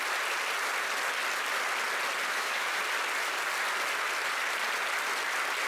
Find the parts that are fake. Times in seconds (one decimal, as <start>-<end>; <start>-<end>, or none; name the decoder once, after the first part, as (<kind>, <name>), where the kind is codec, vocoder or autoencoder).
2.3-2.8 (autoencoder, DAC-VAE)